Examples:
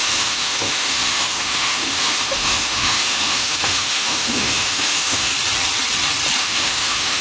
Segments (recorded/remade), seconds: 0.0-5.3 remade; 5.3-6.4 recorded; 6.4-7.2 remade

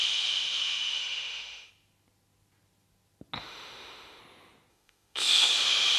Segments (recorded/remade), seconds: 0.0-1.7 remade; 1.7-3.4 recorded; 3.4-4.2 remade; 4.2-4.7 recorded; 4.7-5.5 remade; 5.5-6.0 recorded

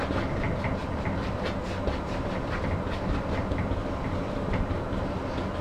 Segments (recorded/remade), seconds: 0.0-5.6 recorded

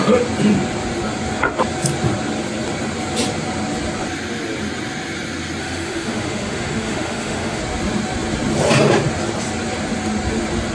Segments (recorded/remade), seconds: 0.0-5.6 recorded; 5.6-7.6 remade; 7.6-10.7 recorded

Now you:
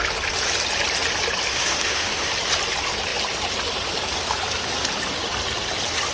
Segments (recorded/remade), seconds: 0.0-1.5 recorded; 1.5-2.3 remade; 2.3-6.1 recorded